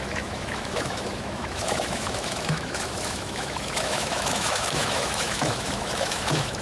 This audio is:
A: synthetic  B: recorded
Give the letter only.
A